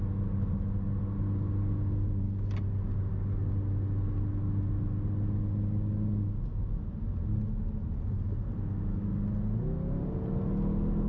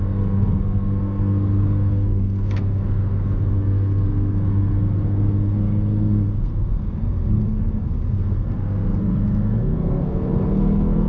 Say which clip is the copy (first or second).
second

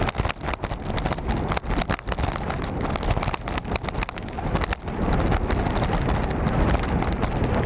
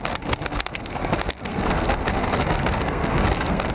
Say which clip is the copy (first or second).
second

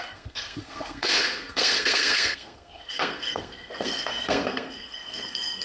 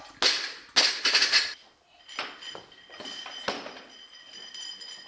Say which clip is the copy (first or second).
first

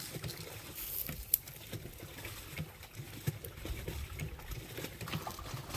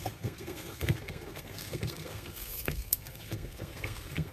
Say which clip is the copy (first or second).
second